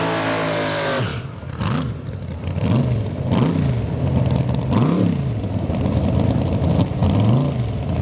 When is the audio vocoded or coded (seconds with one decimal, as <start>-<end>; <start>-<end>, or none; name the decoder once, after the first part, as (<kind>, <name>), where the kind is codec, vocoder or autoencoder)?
4.8-5.7 (vocoder, BigVGAN v2)